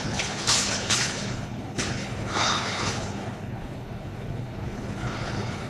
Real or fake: fake